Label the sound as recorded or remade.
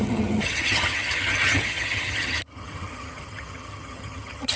remade